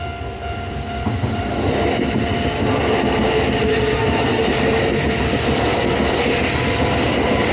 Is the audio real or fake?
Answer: real